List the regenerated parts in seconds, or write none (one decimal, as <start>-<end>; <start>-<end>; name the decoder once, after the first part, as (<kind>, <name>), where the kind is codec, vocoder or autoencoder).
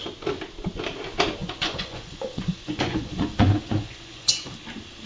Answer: 1.4-4.5 (vocoder, Vocos)